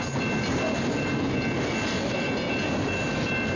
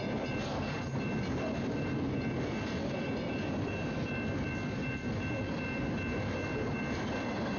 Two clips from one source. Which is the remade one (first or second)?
second